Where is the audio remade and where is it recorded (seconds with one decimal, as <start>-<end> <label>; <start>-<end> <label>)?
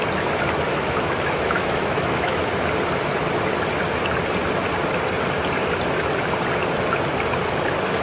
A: 0.0-0.7 recorded; 0.7-2.4 remade; 2.4-8.0 recorded